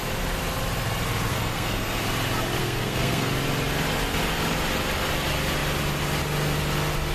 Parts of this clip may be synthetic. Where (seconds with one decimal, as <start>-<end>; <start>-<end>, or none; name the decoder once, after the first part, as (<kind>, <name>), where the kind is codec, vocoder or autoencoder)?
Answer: 1.3-2.0 (codec, SNAC); 2.6-3.3